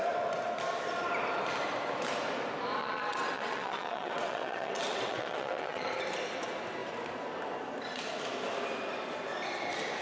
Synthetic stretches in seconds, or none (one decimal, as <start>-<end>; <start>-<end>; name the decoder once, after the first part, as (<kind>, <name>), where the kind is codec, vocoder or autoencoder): 2.8-6.0 (vocoder, WaveNeXt)